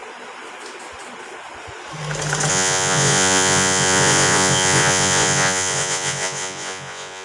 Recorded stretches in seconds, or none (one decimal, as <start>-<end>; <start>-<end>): 0.0-2.5